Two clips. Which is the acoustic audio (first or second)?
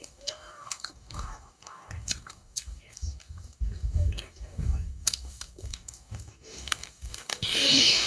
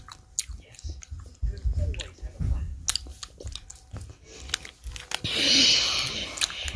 second